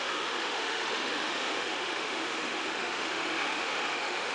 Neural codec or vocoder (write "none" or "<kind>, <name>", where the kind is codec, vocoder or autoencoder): autoencoder, DAC-VAE